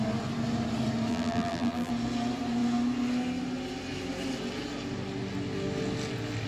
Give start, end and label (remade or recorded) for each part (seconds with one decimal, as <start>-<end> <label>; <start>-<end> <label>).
0.0-1.1 recorded; 1.1-1.9 remade; 1.9-6.5 recorded